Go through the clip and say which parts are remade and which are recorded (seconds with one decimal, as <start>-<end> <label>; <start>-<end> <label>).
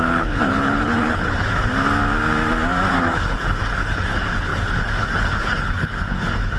0.0-1.7 remade; 1.7-2.9 recorded; 2.9-6.6 remade